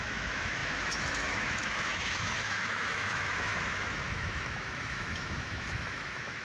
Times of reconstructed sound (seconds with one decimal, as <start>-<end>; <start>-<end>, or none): 0.0-6.4